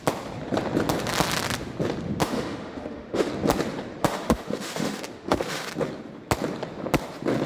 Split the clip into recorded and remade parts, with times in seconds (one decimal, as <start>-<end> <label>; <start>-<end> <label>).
0.0-2.2 recorded; 2.2-3.3 remade; 3.3-4.0 recorded; 4.0-5.7 remade; 5.7-7.5 recorded